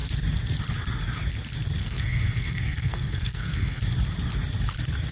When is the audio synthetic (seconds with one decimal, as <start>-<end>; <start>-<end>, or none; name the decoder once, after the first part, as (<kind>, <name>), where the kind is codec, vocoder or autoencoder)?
1.8-3.8 (codec, SNAC)

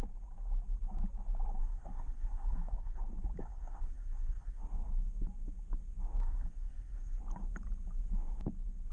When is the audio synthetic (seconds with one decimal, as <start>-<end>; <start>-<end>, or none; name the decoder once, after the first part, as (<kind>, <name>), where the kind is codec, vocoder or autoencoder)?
1.6-3.0 (codec, SNAC); 3.4-4.6; 6.2-7.2

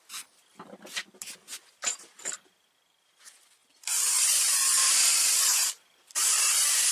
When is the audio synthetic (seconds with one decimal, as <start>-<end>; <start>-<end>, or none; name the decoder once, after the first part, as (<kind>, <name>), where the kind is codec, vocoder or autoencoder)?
none

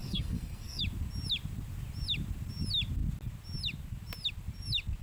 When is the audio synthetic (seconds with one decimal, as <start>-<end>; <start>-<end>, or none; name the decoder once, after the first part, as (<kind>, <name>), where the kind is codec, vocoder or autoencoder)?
0.0-0.8 (codec, SNAC)